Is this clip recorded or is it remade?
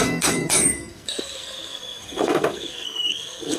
remade